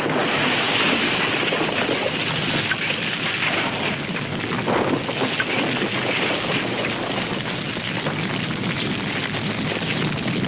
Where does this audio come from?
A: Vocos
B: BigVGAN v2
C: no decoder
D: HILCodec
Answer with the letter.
C